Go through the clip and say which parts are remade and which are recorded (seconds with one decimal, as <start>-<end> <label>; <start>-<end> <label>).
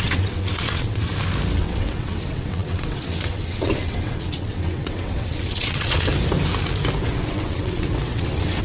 0.0-1.1 remade; 1.1-1.6 recorded; 1.6-6.1 remade; 6.1-7.0 recorded; 7.0-8.6 remade